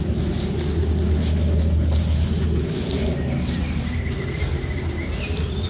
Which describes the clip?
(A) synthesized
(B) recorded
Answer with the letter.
B